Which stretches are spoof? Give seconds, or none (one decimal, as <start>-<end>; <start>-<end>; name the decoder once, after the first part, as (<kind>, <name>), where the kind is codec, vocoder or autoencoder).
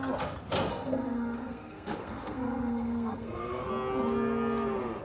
0.7-3.7 (codec, SNAC)